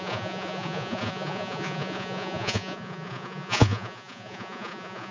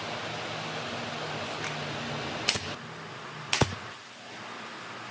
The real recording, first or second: second